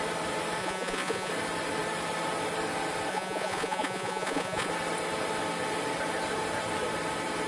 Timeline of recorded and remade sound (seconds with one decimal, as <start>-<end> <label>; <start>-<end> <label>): 0.0-0.6 recorded; 0.6-1.3 remade; 1.3-3.1 recorded; 3.1-4.7 remade; 4.7-7.5 recorded